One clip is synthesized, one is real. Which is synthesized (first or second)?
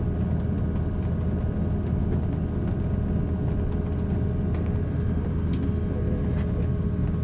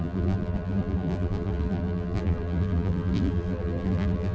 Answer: second